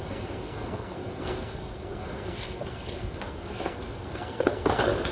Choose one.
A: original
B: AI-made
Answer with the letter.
B